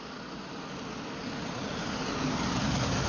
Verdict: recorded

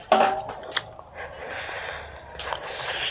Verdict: recorded